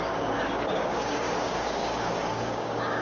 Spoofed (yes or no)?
yes